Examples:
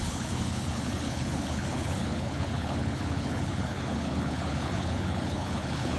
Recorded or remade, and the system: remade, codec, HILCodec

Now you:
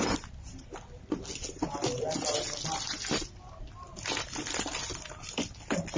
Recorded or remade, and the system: recorded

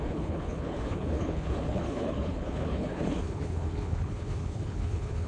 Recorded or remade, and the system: remade, codec, HILCodec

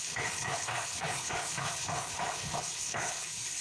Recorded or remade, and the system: remade, codec, HILCodec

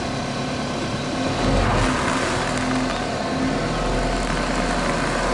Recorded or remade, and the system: recorded